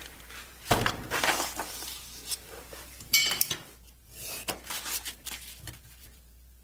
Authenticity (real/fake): fake